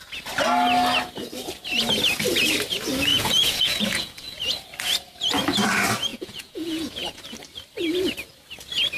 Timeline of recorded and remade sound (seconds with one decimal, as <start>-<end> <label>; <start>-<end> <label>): 0.0-3.1 recorded; 3.1-4.4 remade; 4.4-6.1 recorded; 6.1-7.2 remade; 7.2-9.0 recorded